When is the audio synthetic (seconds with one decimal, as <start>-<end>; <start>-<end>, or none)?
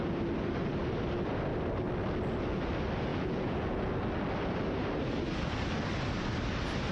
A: 3.1-3.9